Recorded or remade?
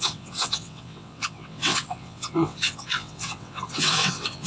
remade